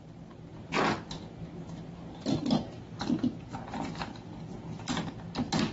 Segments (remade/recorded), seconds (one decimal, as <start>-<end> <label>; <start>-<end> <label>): 0.0-4.5 recorded; 4.5-5.1 remade; 5.1-5.7 recorded